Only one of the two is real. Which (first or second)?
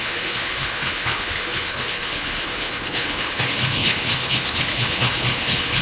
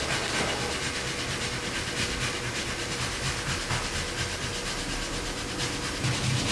second